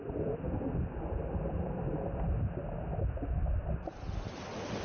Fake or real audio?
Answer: real